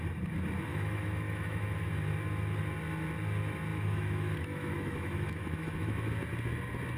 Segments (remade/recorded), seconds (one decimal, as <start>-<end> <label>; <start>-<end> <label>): 0.0-0.7 recorded; 0.7-1.9 remade; 1.9-3.7 recorded; 3.7-6.1 remade; 6.1-7.0 recorded